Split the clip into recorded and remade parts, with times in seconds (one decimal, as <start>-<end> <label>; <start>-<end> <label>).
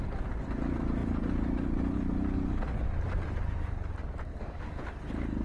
0.0-4.3 recorded; 4.3-4.8 remade; 4.8-5.4 recorded